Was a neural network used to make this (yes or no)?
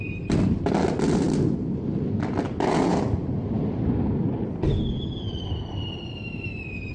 no